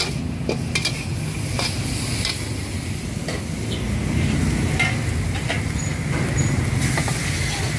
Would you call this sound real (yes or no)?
yes